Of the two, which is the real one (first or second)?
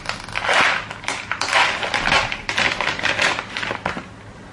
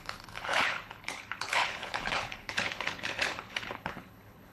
first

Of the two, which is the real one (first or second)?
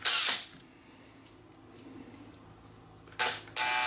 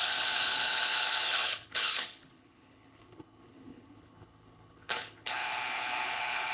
first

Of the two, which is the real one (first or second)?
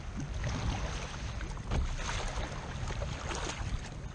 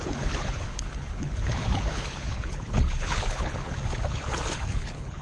first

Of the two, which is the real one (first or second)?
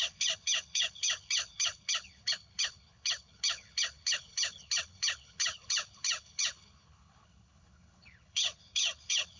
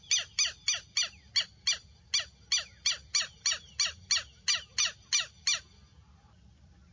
second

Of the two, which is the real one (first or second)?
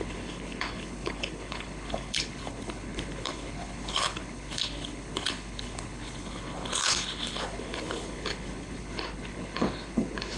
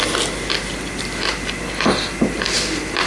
second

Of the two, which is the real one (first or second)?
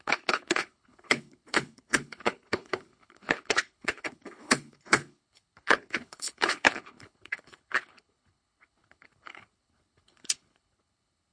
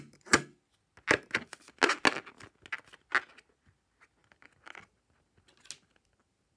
second